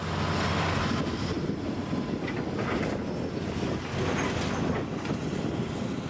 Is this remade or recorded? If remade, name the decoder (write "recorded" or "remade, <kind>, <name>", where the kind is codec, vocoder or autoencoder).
recorded